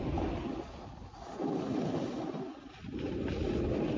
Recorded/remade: recorded